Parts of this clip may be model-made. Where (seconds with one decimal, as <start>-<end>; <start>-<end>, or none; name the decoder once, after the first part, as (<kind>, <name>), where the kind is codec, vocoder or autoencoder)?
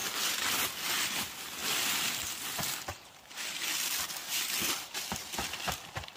0.0-6.2 (vocoder, BigVGAN v2)